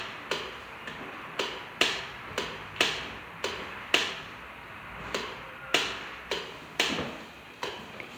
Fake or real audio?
fake